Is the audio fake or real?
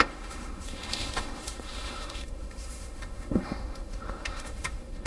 fake